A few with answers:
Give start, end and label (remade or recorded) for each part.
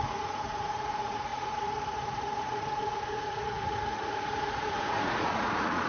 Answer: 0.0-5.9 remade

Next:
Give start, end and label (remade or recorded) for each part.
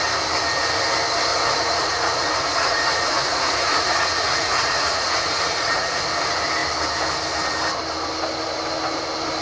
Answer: 0.0-1.3 recorded; 1.3-6.0 remade; 6.0-9.4 recorded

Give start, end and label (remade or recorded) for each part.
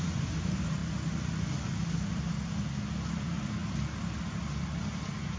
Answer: 0.0-5.4 recorded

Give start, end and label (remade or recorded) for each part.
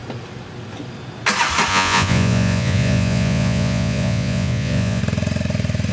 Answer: 0.0-1.7 recorded; 1.7-5.0 remade; 5.0-5.9 recorded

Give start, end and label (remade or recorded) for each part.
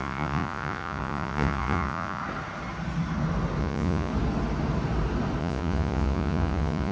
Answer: 0.0-2.2 remade; 2.2-3.6 recorded; 3.6-4.1 remade; 4.1-5.4 recorded; 5.4-6.9 remade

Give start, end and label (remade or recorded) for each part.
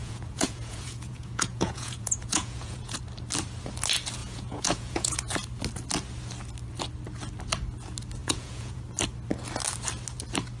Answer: 0.0-3.0 remade; 3.0-4.2 recorded; 4.2-5.2 remade; 5.2-8.2 recorded; 8.2-8.8 remade; 8.8-10.6 recorded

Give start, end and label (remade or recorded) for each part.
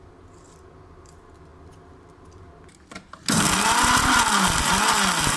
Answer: 0.0-5.4 recorded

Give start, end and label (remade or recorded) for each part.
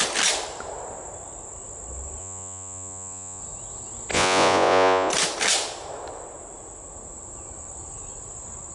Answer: 0.0-2.2 recorded; 2.2-3.4 remade; 3.4-4.1 recorded; 4.1-5.1 remade; 5.1-8.7 recorded